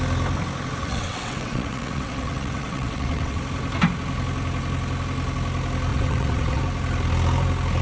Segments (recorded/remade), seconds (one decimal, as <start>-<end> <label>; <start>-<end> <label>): 0.0-0.8 recorded; 0.8-3.4 remade; 3.4-5.9 recorded; 5.9-6.6 remade; 6.6-7.8 recorded